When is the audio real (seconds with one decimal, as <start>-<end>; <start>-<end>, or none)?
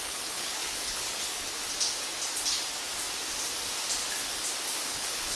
1.6-4.8